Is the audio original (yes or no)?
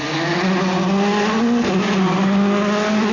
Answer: yes